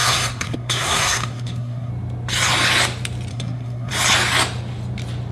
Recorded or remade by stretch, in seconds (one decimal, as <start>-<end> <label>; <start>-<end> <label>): 0.0-1.9 remade; 1.9-3.3 recorded; 3.3-3.9 remade; 3.9-5.3 recorded